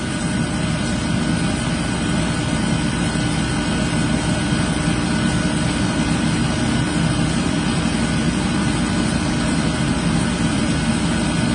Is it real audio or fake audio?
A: real